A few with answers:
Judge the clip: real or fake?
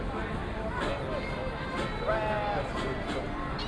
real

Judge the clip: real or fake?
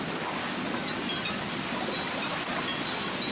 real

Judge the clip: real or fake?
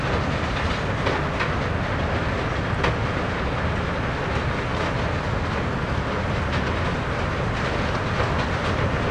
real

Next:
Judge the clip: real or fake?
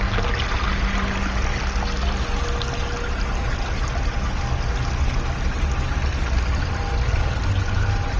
real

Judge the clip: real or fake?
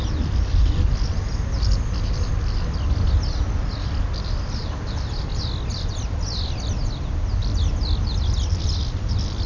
real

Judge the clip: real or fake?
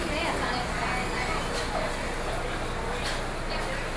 real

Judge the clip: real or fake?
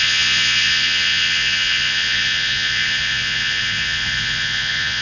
fake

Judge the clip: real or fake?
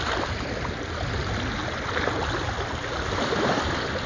real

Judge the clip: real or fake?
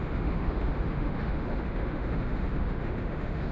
fake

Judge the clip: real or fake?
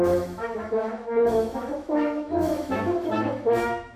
fake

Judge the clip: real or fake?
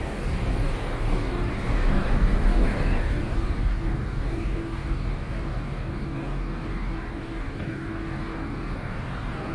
fake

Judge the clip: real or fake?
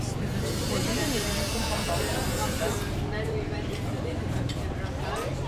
fake